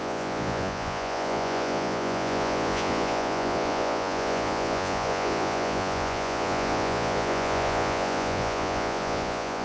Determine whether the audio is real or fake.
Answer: fake